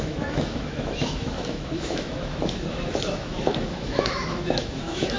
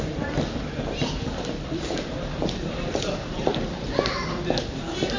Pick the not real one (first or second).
first